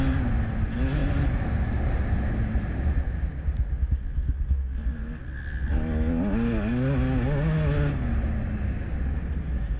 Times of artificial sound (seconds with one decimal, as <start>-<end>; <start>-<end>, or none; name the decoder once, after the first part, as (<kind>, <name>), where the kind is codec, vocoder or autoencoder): 1.0-2.0 (vocoder, BigVGAN v2)